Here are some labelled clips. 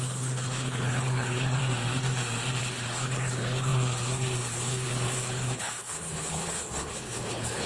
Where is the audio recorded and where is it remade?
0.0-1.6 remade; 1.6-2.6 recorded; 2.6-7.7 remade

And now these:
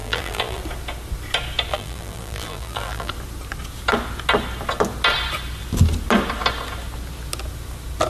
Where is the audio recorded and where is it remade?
0.0-0.6 remade; 0.6-1.7 recorded; 1.7-3.1 remade; 3.1-8.1 recorded

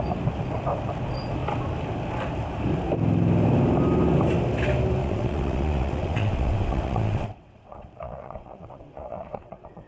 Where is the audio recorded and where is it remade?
0.0-5.0 recorded; 5.0-9.9 remade

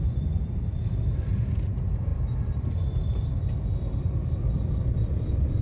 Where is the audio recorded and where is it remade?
0.0-5.6 remade